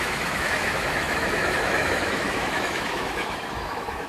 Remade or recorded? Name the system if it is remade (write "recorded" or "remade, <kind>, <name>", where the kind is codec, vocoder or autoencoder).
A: remade, autoencoder, DAC-VAE